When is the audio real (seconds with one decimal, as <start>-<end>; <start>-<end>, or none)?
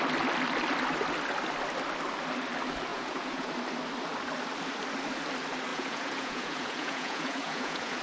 0.0-2.9; 3.5-5.7